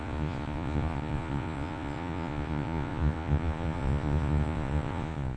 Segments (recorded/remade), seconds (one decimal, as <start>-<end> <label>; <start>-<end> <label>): 0.0-5.4 remade